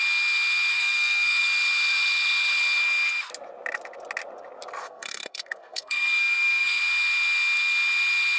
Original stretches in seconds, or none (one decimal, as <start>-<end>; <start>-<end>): 0.0-0.7; 1.4-4.8; 6.8-8.4